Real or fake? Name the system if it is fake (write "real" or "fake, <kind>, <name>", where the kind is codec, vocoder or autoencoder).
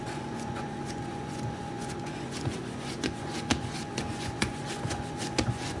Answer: fake, vocoder, Vocos